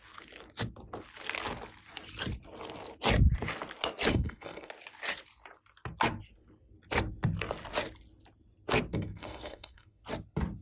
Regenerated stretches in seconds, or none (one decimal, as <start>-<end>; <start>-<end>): 4.1-4.7; 8.9-10.0